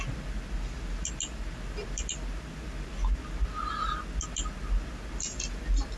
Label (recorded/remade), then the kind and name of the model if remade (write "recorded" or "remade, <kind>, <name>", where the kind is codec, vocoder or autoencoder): recorded